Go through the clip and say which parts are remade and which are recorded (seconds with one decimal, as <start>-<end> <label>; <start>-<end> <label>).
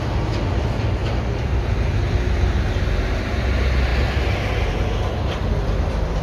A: 0.0-6.2 recorded